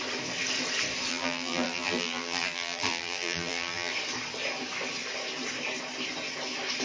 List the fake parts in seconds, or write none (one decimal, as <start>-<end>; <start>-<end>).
1.1-3.9